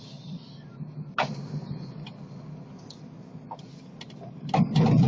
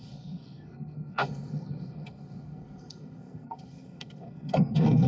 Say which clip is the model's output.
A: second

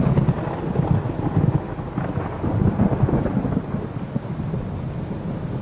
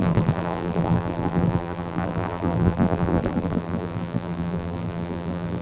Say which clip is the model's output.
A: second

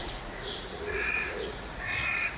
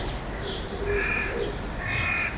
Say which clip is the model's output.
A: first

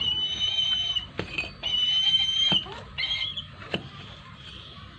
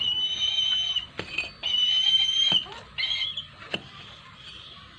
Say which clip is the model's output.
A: first